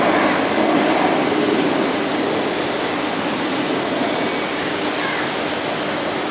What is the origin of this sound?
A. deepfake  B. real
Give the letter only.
B